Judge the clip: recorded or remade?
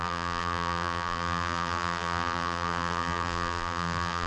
remade